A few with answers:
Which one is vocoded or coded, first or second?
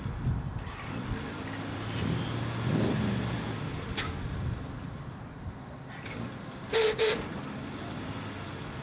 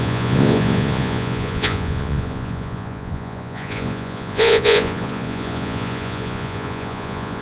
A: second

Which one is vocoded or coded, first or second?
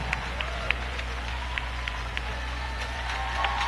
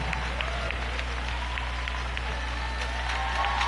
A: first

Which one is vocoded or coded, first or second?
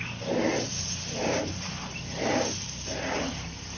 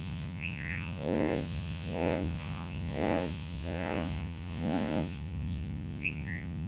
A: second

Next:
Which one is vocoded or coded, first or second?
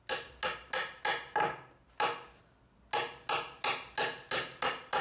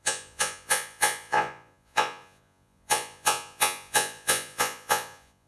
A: second